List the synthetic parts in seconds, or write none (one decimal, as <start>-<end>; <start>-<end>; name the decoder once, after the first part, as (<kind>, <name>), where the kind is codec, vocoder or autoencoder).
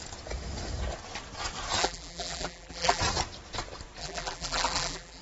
1.8-3.0 (vocoder, BigVGAN v2); 4.0-5.2